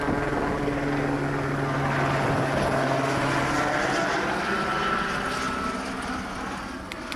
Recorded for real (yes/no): yes